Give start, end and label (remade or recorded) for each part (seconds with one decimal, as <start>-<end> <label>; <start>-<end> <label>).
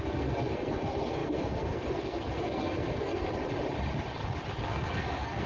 0.0-3.3 remade; 3.3-4.6 recorded; 4.6-5.5 remade